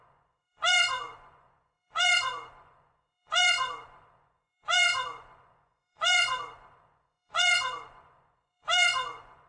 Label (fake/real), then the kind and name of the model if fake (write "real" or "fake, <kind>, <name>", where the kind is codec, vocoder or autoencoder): fake, vocoder, Vocos